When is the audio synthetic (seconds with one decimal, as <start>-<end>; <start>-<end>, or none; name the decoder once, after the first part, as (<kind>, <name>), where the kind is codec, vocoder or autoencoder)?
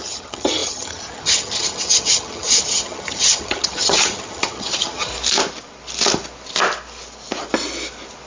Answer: 0.0-5.1 (vocoder, HiFi-GAN)